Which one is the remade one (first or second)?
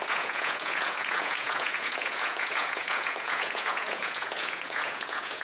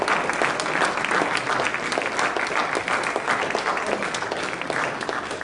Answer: first